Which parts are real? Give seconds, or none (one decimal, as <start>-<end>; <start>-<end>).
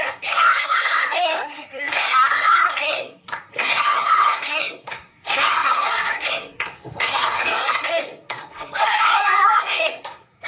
none